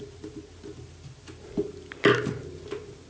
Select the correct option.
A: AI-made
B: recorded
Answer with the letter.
B